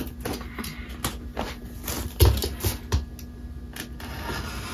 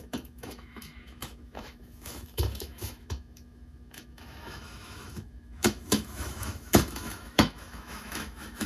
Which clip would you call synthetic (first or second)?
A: second